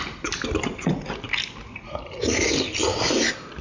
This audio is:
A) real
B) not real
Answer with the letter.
A